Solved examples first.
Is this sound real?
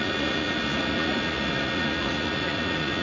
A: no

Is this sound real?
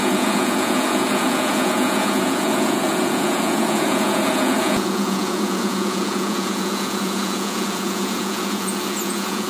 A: no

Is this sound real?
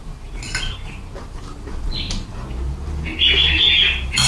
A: yes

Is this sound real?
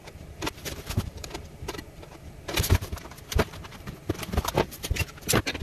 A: no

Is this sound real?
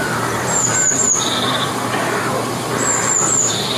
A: no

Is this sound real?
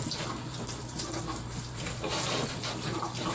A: no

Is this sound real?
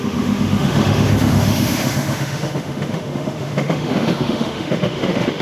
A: no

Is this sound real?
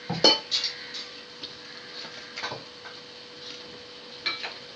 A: yes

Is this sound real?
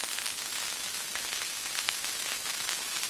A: no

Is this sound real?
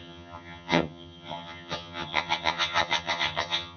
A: no